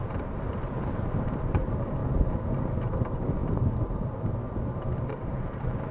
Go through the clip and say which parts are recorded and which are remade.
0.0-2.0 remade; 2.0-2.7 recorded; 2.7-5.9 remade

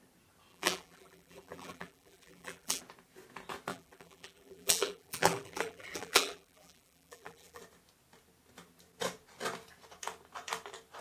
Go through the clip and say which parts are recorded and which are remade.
0.0-0.5 recorded; 0.5-2.8 remade; 2.8-3.7 recorded; 3.7-7.6 remade; 7.6-11.0 recorded

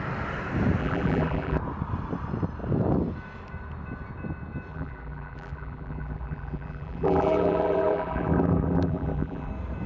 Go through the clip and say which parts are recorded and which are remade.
0.0-0.8 recorded; 0.8-1.6 remade; 1.6-4.7 recorded; 4.7-9.5 remade; 9.5-9.9 recorded